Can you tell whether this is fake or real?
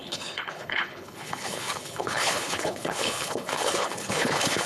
fake